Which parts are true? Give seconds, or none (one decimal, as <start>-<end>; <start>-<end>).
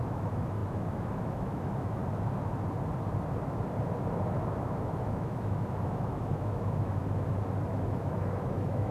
2.0-4.6; 7.0-7.7